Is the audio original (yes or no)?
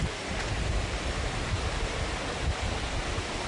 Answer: yes